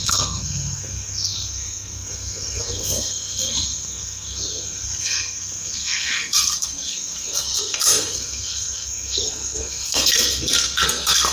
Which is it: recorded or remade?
remade